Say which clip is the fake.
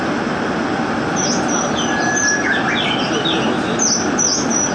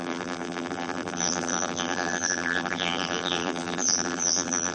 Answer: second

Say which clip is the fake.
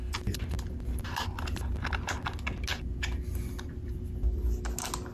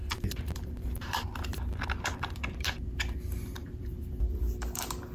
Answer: second